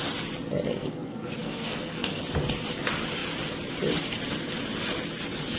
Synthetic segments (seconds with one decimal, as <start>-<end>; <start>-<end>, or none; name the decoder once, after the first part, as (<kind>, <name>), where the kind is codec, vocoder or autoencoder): 0.8-2.2 (codec, SNAC)